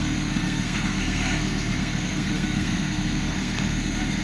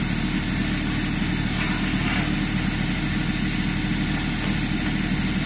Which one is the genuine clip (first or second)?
second